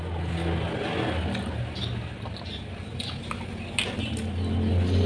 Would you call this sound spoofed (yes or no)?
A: no